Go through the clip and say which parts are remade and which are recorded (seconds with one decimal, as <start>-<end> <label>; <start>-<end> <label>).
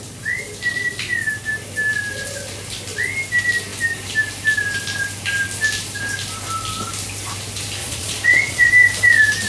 0.0-7.8 recorded; 7.8-8.7 remade; 8.7-9.5 recorded